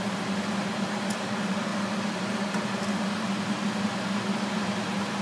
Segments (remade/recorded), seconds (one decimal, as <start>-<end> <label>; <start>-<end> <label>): 0.0-5.2 recorded